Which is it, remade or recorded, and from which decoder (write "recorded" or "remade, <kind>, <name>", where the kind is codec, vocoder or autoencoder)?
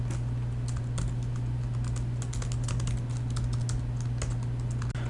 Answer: recorded